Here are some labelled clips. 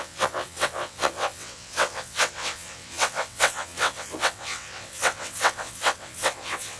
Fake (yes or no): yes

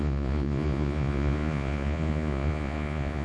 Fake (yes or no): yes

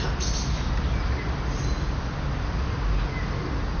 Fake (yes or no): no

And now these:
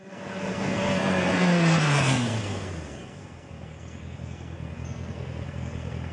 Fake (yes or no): yes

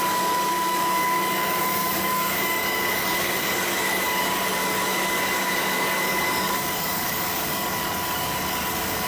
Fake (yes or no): yes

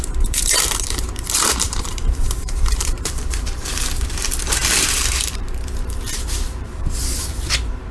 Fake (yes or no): yes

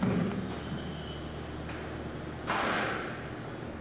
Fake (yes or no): no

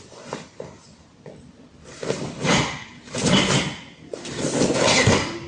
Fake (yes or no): no